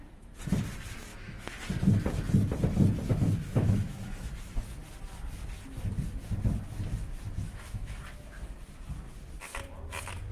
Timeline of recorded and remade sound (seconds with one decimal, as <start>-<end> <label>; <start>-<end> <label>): 0.0-1.1 recorded; 1.1-1.6 remade; 1.6-3.1 recorded; 3.1-4.8 remade; 4.8-7.4 recorded; 7.4-7.9 remade; 7.9-10.3 recorded